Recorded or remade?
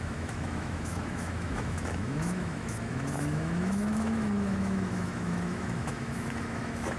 remade